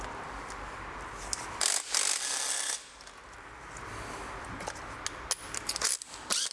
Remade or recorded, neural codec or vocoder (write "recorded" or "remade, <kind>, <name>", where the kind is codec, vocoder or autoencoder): recorded